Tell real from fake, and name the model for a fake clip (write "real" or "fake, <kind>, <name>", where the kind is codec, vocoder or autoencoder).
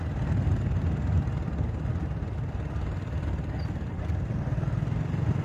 real